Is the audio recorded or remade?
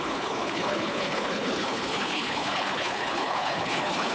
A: remade